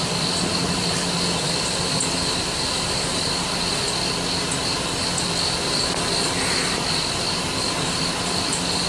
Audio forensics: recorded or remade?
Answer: recorded